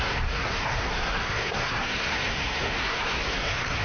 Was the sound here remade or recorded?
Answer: remade